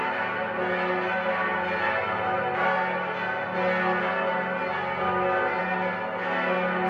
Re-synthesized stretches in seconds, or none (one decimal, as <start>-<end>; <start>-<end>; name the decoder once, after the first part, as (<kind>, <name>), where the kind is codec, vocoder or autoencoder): none